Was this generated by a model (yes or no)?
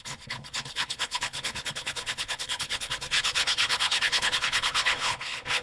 yes